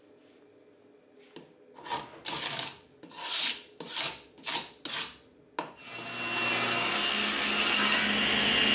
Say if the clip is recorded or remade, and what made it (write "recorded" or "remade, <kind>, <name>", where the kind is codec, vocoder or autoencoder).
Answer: recorded